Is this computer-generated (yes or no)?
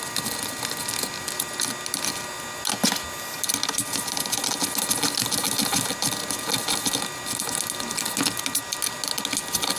no